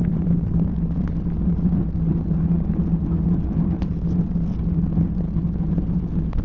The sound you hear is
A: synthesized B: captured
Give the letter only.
B